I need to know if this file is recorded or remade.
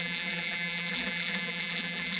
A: remade